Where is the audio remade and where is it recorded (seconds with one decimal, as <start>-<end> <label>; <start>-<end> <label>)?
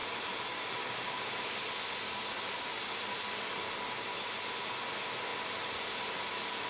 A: 0.0-2.9 remade; 2.9-5.3 recorded; 5.3-6.2 remade; 6.2-6.7 recorded